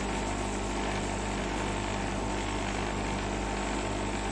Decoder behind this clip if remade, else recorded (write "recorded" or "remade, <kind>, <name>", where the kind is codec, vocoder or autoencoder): recorded